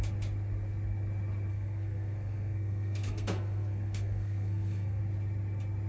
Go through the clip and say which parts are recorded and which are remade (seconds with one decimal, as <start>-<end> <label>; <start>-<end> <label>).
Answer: 0.0-1.5 recorded; 1.5-5.0 remade; 5.0-5.9 recorded